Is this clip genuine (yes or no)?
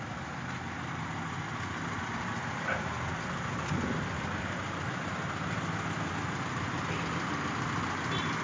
yes